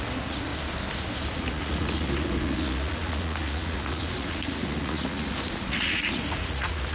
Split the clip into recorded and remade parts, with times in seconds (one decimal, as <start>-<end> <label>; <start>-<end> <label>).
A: 0.0-0.5 remade; 0.5-1.3 recorded; 1.3-6.9 remade